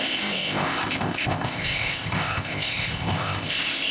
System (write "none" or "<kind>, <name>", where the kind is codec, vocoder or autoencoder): codec, ZipCodec